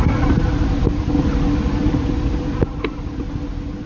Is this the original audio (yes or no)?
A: yes